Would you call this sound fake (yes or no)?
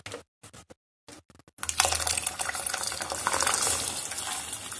no